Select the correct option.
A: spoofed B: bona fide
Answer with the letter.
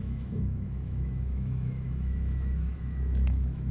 A